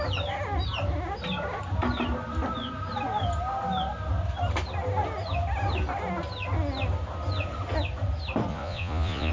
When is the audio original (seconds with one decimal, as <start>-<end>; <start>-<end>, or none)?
0.0-8.5